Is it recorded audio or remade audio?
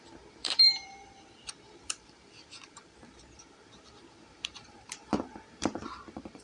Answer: remade